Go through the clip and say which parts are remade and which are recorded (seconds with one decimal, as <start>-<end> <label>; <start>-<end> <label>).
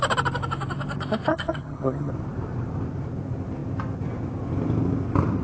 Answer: 0.0-1.3 recorded; 1.3-2.1 remade; 2.1-5.4 recorded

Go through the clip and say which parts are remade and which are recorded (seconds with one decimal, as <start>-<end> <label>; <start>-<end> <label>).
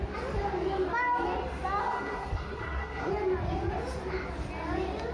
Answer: 0.0-1.8 recorded; 1.8-3.1 remade; 3.1-5.1 recorded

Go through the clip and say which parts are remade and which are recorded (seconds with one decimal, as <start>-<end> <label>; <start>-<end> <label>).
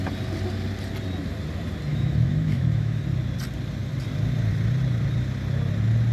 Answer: 0.0-1.9 recorded; 1.9-3.0 remade; 3.0-6.1 recorded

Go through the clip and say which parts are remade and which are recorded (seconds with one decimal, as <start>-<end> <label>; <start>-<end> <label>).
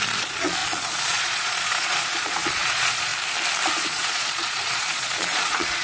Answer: 0.0-3.1 remade; 3.1-3.7 recorded; 3.7-5.8 remade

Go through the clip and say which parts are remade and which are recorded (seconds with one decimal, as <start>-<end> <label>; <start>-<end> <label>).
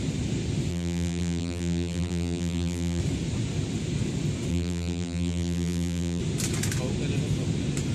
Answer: 0.0-0.7 recorded; 0.7-3.0 remade; 3.0-4.5 recorded; 4.5-6.2 remade; 6.2-7.9 recorded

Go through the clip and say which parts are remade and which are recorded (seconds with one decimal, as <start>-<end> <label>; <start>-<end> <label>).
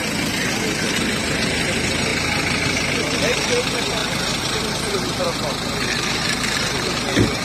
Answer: 0.0-2.1 recorded; 2.1-3.2 remade; 3.2-7.4 recorded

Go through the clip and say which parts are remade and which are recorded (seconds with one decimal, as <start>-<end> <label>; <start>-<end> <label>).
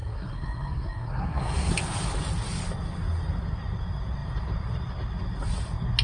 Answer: 0.0-1.7 remade; 1.7-6.0 recorded